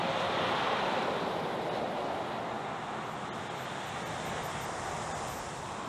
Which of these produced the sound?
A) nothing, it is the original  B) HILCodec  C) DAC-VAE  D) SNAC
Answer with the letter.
A